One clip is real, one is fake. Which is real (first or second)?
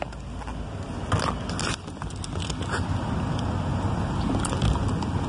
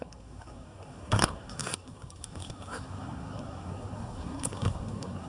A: first